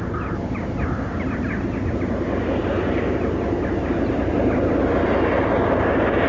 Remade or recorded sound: recorded